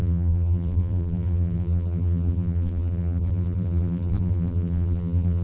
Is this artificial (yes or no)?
yes